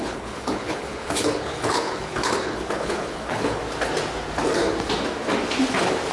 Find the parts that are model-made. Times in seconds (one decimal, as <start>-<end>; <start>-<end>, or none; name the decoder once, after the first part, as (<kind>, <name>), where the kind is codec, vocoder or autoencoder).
0.0-3.6 (codec, HILCodec)